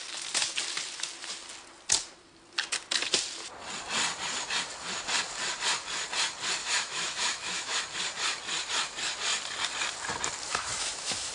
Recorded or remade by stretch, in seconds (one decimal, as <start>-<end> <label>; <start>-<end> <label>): 0.0-6.6 recorded; 6.6-7.8 remade; 7.8-10.5 recorded; 10.5-11.3 remade